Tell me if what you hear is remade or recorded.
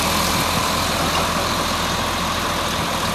recorded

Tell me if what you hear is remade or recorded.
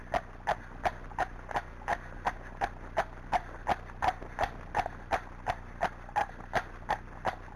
recorded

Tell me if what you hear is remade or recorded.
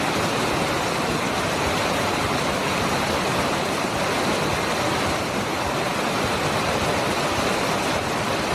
recorded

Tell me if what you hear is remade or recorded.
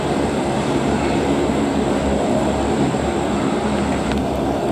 remade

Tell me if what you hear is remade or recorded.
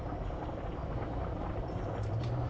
remade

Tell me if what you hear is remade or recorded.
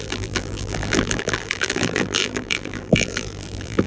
remade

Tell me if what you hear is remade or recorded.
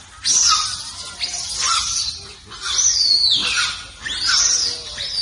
recorded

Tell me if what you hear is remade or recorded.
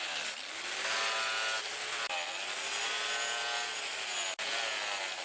recorded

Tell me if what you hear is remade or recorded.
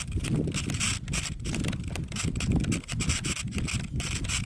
remade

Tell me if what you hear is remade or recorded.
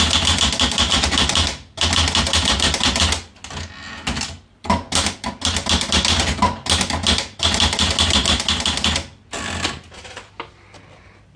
recorded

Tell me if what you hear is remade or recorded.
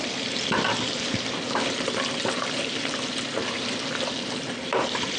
remade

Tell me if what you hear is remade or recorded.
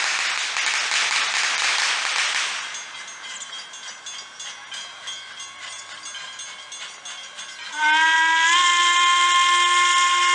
recorded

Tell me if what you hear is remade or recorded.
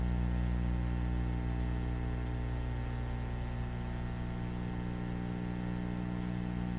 recorded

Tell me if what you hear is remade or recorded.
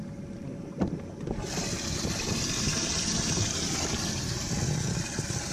recorded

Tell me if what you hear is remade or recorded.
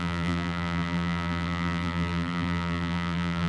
remade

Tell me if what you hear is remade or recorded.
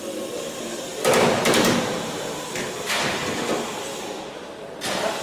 recorded